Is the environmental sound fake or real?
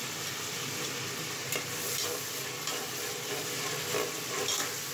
real